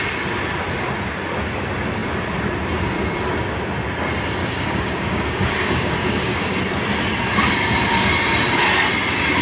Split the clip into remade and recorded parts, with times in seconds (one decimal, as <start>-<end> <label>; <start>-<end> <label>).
0.0-4.4 recorded; 4.4-6.6 remade; 6.6-9.4 recorded